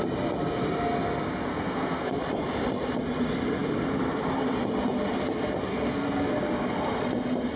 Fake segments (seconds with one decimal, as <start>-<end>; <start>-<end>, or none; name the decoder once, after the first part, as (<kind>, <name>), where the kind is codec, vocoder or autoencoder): 1.5-2.2 (codec, SNAC); 5.7-6.3